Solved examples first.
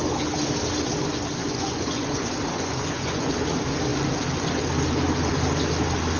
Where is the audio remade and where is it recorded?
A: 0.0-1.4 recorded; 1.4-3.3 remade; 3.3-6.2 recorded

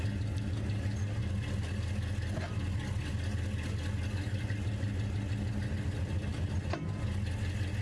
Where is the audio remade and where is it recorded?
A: 0.0-7.8 recorded

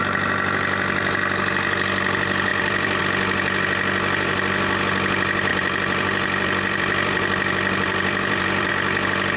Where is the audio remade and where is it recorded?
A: 0.0-2.5 recorded; 2.5-3.0 remade; 3.0-5.5 recorded; 5.5-8.7 remade; 8.7-9.4 recorded

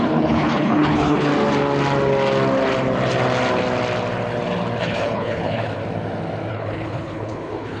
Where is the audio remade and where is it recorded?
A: 0.0-1.3 remade; 1.3-4.8 recorded; 4.8-5.8 remade; 5.8-6.5 recorded; 6.5-7.8 remade

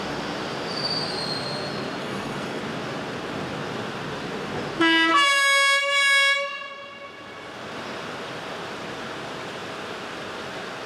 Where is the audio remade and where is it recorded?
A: 0.0-2.0 recorded; 2.0-2.6 remade; 2.6-10.9 recorded

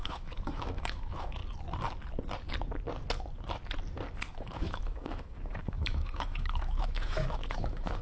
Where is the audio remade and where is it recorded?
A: 0.0-1.4 remade; 1.4-4.3 recorded; 4.3-8.0 remade

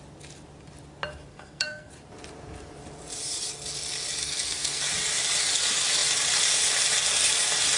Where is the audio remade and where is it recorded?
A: 0.0-1.3 recorded; 1.3-1.9 remade; 1.9-4.2 recorded; 4.2-4.8 remade; 4.8-7.8 recorded

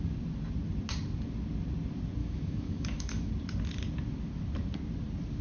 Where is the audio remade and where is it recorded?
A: 0.0-2.2 recorded; 2.2-3.3 remade; 3.3-5.4 recorded